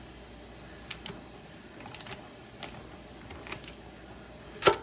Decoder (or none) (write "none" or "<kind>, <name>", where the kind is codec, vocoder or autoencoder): none